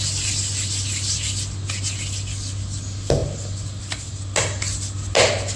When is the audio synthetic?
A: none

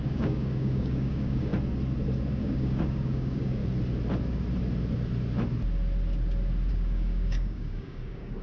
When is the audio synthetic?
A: 0.0-1.5 (codec, DAC); 2.4-3.6; 6.7-8.4

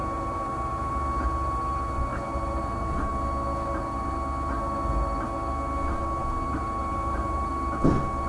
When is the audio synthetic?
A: 0.0-0.9 (vocoder, BigVGAN v2); 2.1-3.1; 6.2-7.5

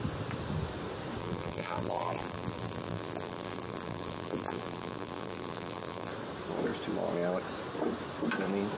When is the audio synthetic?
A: 1.2-6.1 (vocoder, BigVGAN v2)